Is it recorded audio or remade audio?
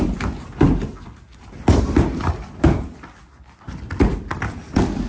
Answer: recorded